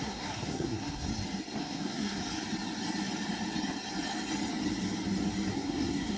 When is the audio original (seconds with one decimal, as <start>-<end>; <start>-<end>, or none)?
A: 1.1-1.6; 2.2-5.5